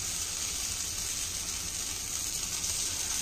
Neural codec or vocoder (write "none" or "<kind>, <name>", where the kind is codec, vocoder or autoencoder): none